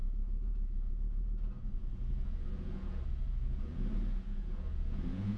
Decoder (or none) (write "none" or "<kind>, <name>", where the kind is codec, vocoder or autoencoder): vocoder, Vocos